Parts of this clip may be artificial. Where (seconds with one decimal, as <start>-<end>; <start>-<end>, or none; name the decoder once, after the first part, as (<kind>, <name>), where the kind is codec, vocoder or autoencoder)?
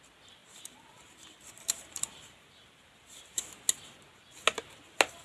0.4-3.5 (vocoder, BigVGAN v2)